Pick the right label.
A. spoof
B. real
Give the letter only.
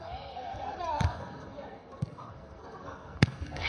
A